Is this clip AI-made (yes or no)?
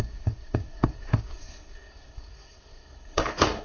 yes